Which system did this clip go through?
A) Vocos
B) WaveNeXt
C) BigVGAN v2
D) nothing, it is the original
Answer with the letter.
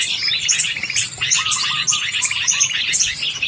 D